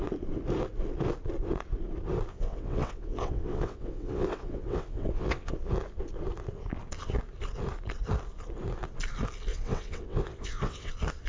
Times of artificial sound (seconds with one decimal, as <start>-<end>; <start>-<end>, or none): 2.3-5.5; 9.5-10.9